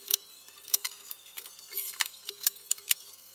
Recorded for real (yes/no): no